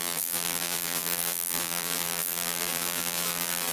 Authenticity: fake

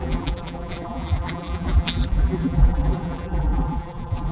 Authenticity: fake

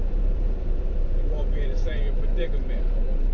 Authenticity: fake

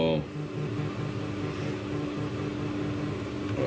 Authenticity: real